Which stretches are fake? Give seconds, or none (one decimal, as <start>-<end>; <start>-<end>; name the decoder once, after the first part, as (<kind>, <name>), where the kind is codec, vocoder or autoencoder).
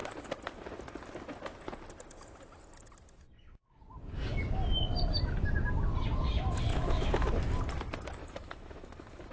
6.7-7.3 (autoencoder, DAC-VAE); 8.2-9.3